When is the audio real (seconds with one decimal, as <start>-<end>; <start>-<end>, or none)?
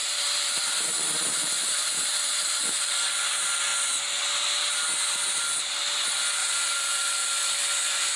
2.9-6.4; 7.6-8.2